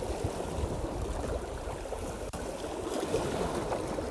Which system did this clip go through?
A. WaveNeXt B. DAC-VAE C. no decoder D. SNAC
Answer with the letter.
C